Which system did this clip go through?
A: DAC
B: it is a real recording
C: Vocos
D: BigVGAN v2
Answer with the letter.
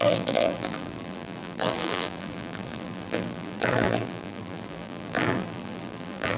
D